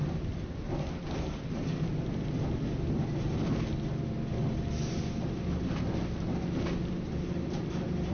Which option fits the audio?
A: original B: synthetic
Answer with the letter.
A